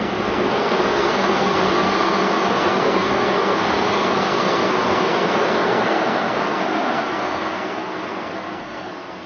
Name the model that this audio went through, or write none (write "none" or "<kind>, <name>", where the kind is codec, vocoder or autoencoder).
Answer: codec, SNAC